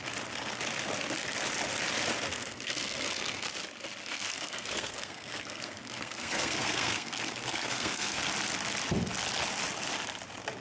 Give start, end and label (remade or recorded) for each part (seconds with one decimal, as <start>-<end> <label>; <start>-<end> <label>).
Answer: 0.0-2.3 recorded; 2.3-3.5 remade; 3.5-4.0 recorded; 4.0-8.2 remade; 8.2-10.6 recorded